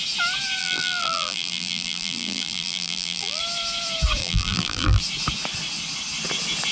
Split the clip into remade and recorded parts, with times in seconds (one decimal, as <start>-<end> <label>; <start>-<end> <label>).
0.0-0.6 recorded; 0.6-3.4 remade; 3.4-4.2 recorded; 4.2-5.0 remade; 5.0-6.7 recorded